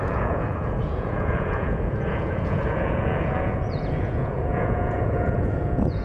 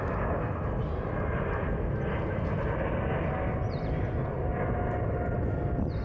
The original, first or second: second